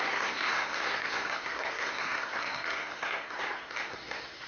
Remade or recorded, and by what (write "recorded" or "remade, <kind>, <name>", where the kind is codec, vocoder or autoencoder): remade, codec, SNAC